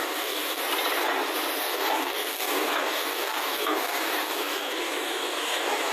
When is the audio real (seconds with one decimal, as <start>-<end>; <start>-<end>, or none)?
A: 0.6-1.6